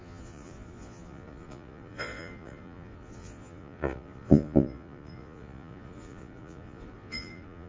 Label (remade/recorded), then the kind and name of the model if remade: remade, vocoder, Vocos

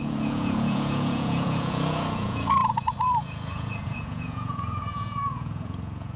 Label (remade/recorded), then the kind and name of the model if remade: remade, vocoder, Vocos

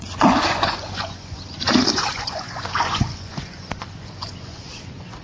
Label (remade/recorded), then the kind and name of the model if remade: remade, vocoder, Vocos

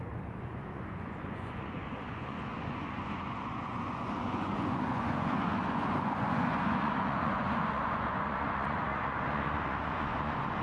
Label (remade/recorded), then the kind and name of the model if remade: remade, vocoder, Vocos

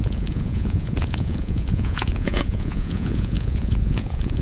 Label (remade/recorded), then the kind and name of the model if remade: remade, vocoder, Vocos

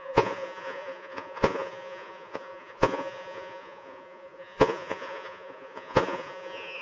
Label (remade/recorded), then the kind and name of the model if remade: remade, vocoder, Vocos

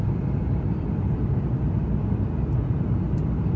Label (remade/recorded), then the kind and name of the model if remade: recorded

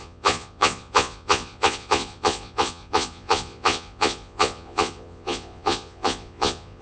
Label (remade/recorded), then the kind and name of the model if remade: remade, vocoder, Vocos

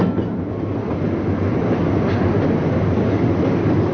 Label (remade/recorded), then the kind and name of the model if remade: recorded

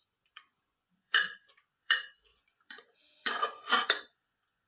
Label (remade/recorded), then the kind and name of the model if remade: remade, vocoder, Vocos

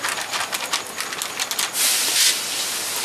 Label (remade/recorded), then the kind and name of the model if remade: recorded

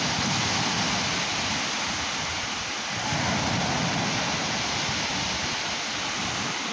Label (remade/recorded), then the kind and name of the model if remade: recorded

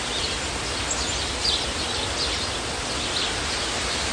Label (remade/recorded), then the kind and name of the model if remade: recorded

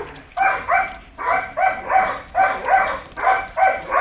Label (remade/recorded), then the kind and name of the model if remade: recorded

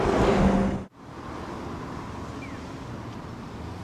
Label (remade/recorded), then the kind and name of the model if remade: recorded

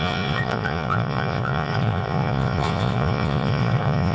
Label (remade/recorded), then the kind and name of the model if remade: remade, vocoder, Vocos